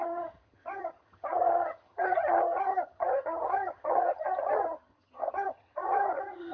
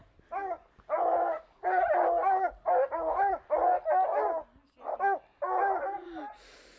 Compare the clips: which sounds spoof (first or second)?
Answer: first